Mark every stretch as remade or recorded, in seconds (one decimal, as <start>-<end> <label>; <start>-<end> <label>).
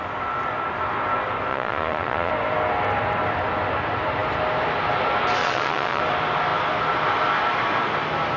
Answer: 0.0-1.5 recorded; 1.5-2.3 remade; 2.3-5.4 recorded; 5.4-6.0 remade; 6.0-8.4 recorded